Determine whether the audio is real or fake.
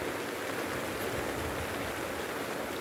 real